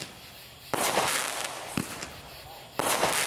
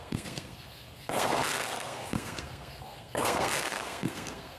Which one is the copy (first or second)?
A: second